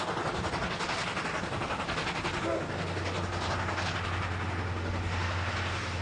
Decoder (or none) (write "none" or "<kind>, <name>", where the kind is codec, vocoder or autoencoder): none